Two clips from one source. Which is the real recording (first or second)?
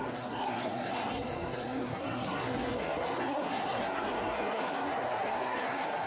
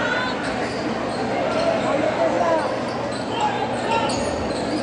second